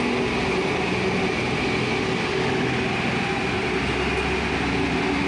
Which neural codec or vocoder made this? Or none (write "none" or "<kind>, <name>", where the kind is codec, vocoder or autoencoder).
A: none